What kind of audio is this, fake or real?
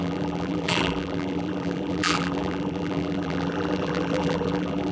fake